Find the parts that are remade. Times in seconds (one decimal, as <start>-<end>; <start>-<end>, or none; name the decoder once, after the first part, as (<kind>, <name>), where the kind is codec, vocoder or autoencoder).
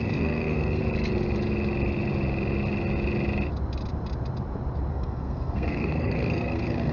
0.0-0.8 (codec, SNAC); 4.9-6.9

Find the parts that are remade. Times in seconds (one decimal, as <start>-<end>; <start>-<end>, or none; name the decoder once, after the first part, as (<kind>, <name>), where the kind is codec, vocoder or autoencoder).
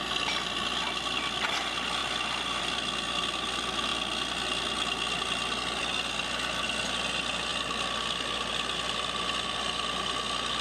none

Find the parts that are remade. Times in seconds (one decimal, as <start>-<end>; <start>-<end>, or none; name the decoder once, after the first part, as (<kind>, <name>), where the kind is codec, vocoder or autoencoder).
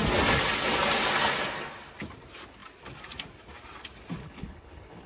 4.2-5.1 (codec, HILCodec)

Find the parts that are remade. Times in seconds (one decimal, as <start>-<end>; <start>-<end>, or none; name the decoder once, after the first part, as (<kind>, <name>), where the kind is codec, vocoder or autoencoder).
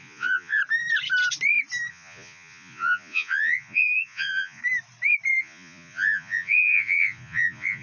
0.0-0.6 (vocoder, Vocos); 1.9-4.6; 5.4-7.8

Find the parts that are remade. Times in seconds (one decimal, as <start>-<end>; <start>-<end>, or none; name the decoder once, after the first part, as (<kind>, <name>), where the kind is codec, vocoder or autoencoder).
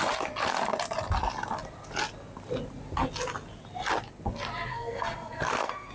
4.7-5.9 (codec, SNAC)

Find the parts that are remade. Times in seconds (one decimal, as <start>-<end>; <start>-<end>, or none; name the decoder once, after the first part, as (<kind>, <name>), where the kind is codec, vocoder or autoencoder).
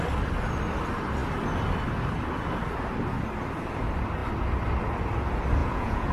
5.6-6.1 (vocoder, Vocos)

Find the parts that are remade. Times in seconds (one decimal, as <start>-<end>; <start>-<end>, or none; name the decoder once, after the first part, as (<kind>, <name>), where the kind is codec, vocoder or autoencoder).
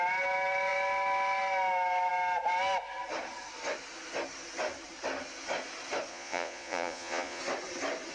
6.1-7.4 (vocoder, Vocos)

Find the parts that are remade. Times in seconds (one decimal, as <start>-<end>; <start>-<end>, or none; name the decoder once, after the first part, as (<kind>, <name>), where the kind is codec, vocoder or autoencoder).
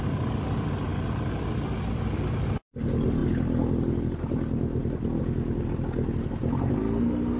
none